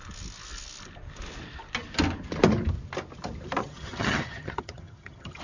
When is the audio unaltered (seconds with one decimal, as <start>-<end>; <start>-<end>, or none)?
0.0-3.6